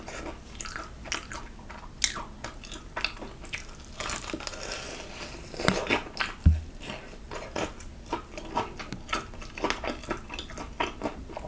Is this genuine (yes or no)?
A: yes